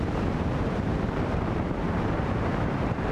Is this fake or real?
fake